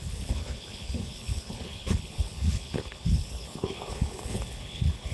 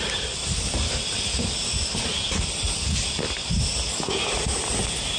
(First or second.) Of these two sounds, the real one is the second